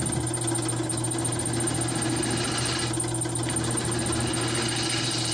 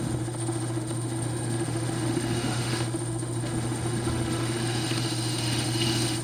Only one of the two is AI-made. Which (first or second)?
second